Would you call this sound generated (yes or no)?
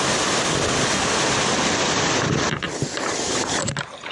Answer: no